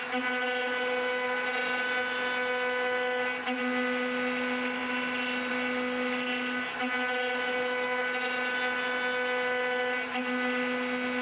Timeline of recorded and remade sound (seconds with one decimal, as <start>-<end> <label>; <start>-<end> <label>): 0.0-11.2 recorded